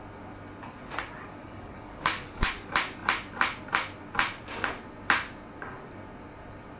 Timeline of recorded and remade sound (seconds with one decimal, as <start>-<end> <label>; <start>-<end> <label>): 0.0-1.4 recorded; 1.4-2.5 remade; 2.5-6.8 recorded